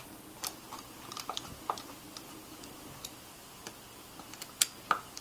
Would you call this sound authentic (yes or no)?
yes